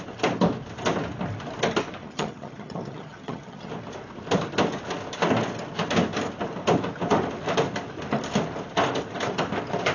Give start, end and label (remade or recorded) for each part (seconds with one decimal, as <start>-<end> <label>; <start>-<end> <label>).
0.0-2.0 recorded; 2.0-3.7 remade; 3.7-9.9 recorded